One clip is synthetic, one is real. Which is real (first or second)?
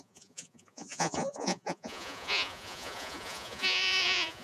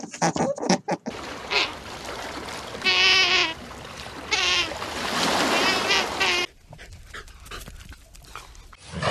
second